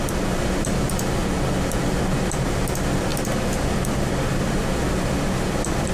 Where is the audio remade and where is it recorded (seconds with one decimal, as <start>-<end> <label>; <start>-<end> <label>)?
0.0-5.9 recorded